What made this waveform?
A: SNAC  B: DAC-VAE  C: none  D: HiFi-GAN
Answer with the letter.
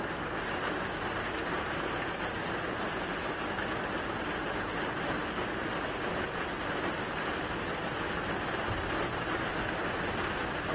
C